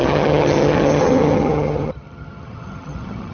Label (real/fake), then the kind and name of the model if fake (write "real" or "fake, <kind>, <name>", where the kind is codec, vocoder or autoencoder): fake, vocoder, HiFi-GAN